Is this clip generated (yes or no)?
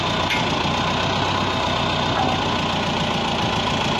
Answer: no